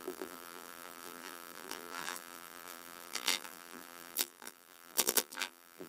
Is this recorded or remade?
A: remade